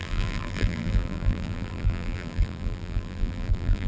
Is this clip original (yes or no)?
no